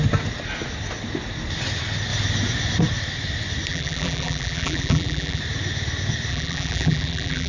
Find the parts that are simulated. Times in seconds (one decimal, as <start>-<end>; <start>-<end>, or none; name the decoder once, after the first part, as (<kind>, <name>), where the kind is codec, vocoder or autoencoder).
3.7-5.4 (vocoder, BigVGAN v2); 6.3-7.5